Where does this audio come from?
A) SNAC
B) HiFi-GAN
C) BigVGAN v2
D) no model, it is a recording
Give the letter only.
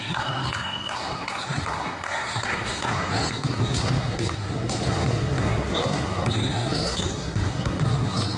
A